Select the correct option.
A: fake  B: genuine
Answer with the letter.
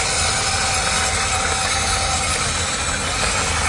B